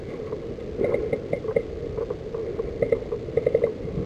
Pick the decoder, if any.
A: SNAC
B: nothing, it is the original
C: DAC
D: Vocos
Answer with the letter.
B